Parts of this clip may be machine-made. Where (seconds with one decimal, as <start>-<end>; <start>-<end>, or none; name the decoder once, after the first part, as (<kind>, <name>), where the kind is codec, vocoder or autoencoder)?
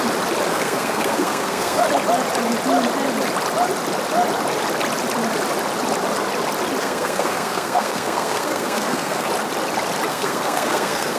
0.5-1.8 (codec, SNAC); 6.8-9.3; 10.1-11.2